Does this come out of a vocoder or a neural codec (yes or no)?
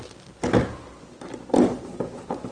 no